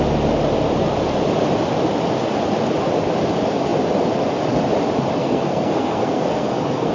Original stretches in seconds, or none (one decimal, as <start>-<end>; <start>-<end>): 0.0-5.2